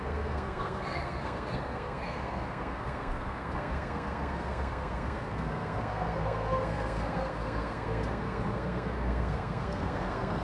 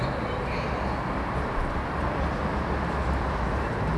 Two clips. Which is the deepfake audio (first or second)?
first